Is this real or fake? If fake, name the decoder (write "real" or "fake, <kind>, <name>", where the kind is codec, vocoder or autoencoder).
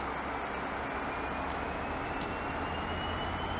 real